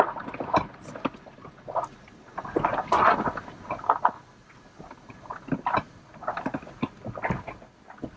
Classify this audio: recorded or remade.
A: recorded